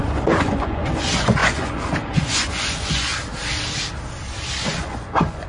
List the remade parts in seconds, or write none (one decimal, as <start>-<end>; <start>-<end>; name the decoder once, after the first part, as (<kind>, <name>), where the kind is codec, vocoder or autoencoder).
0.0-3.1 (vocoder, Vocos); 4.6-5.5